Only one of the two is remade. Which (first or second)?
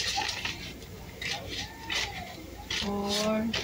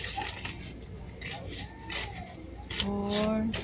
first